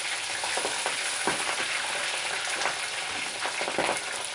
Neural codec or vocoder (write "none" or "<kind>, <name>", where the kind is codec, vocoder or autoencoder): none